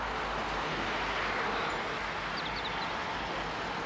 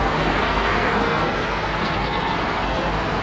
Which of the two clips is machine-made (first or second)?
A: second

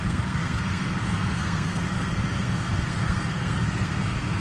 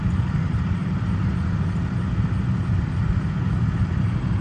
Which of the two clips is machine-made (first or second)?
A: first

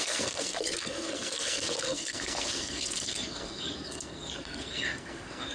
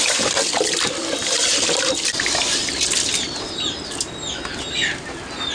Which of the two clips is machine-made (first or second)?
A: first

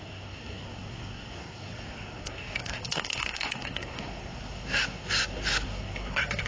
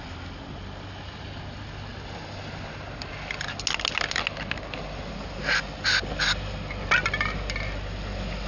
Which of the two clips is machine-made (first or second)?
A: first